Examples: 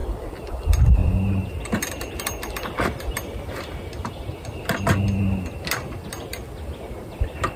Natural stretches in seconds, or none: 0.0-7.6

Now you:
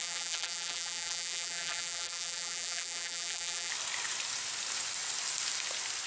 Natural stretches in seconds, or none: 3.7-6.1

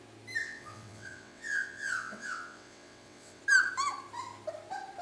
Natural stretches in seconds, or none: 0.0-0.4; 3.4-5.0

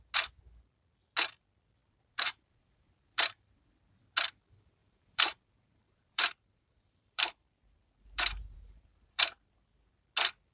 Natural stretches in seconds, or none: 0.0-1.8; 3.8-4.8; 9.9-10.5

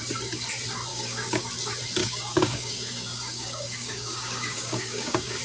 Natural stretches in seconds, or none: 0.0-0.9; 1.5-2.0